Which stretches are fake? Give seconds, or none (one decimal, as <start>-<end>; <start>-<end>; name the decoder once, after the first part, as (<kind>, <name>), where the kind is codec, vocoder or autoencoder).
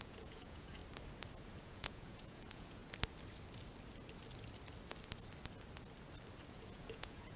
0.0-0.8 (vocoder, Vocos); 1.6-2.8; 6.5-7.4